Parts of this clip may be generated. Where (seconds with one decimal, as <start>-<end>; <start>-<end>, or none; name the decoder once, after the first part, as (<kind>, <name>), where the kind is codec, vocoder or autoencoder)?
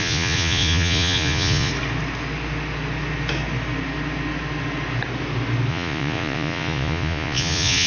0.0-1.7 (vocoder, Vocos); 5.7-7.9